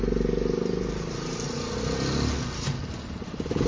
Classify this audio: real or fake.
real